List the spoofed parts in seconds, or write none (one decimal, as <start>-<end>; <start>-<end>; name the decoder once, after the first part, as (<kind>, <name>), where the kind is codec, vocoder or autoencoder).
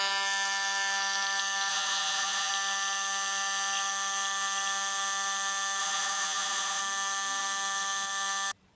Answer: 1.7-2.5 (vocoder, Vocos); 5.8-6.8